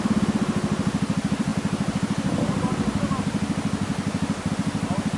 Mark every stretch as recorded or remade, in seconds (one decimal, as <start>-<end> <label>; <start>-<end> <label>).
0.0-5.2 recorded